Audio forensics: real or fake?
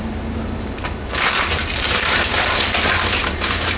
fake